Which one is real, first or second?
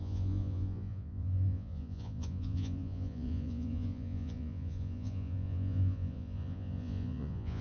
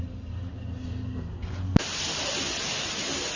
second